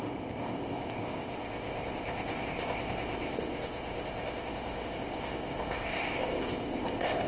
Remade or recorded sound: remade